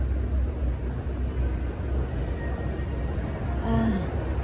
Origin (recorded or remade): recorded